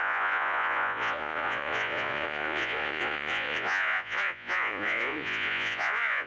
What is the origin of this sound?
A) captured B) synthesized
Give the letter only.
B